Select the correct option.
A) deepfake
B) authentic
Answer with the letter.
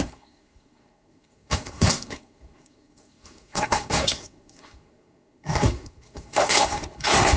A